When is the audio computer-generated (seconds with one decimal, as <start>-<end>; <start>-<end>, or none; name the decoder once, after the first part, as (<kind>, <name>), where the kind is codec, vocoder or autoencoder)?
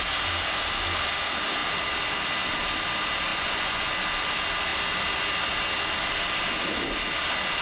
3.3-3.9 (vocoder, Vocos)